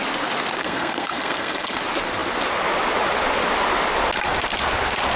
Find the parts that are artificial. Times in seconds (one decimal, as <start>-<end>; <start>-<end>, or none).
0.6-1.8